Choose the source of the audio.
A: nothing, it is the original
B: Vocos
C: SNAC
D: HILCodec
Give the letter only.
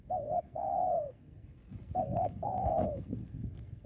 C